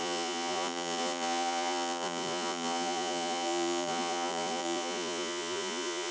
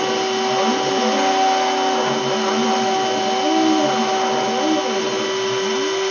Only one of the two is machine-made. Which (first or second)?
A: first